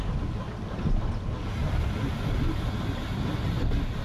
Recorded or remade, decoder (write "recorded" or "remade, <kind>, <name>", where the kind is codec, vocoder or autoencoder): recorded